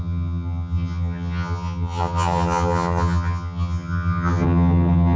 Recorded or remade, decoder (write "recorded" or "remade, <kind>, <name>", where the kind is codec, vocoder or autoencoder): remade, vocoder, HiFi-GAN